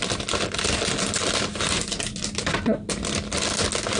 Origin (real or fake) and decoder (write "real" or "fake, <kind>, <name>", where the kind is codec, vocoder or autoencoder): real